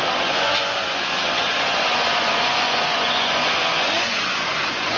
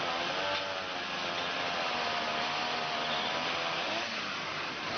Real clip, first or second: second